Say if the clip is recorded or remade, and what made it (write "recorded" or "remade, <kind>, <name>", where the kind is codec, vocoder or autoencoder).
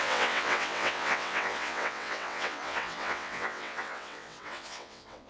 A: remade, vocoder, WaveNeXt